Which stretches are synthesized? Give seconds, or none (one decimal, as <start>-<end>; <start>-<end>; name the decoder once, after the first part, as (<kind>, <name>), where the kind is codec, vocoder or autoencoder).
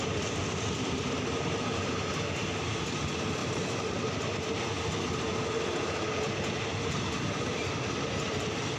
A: 3.4-4.0 (vocoder, BigVGAN v2)